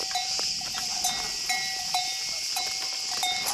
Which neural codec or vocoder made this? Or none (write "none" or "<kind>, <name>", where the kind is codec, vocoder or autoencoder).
none